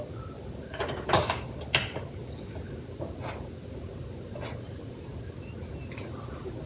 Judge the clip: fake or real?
real